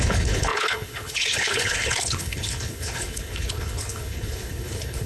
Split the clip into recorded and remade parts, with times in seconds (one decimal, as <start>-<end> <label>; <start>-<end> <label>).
0.0-5.1 remade